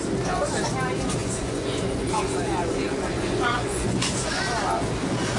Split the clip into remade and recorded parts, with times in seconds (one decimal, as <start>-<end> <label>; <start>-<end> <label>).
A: 0.0-1.2 recorded; 1.2-4.4 remade; 4.4-5.4 recorded